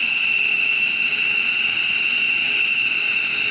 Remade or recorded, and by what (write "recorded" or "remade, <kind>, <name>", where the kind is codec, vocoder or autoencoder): recorded